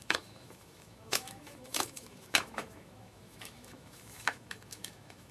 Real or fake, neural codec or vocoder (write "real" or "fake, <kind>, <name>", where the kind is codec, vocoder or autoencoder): fake, autoencoder, DAC-VAE